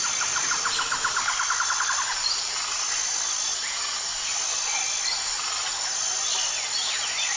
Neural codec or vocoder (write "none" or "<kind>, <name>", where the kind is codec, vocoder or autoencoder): none